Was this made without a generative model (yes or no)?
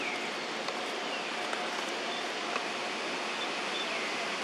yes